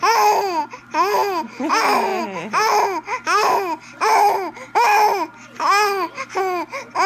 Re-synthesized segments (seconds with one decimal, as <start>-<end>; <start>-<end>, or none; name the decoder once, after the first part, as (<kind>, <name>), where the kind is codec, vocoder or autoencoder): none